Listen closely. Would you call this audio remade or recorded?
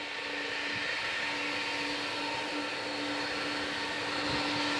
recorded